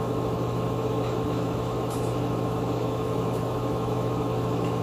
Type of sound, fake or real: fake